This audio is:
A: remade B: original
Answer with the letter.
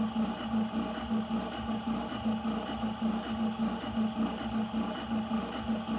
B